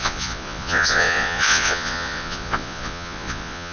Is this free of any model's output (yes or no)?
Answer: no